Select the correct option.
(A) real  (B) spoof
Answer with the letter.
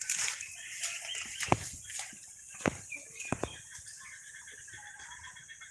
A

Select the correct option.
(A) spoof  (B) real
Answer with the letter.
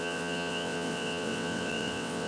A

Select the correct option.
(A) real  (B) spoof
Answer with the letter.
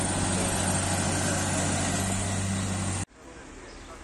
A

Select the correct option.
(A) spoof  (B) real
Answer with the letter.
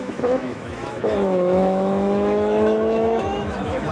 A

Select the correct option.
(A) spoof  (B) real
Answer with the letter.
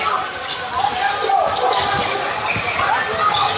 B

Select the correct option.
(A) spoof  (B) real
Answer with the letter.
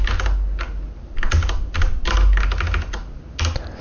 B